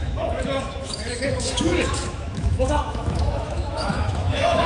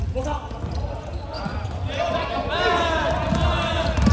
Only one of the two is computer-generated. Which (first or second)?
first